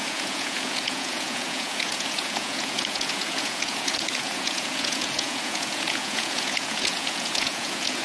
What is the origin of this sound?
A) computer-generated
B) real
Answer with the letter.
A